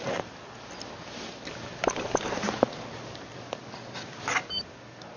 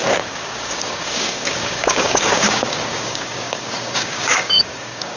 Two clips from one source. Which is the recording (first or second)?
first